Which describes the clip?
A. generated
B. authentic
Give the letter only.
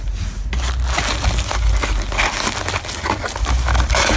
B